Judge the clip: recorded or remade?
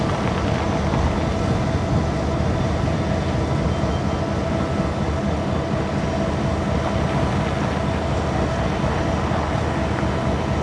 recorded